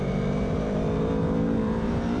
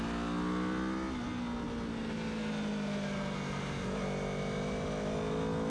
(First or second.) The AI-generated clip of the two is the first